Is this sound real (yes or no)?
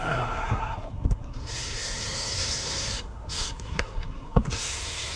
no